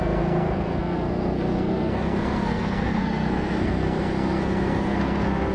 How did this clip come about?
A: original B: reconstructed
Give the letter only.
B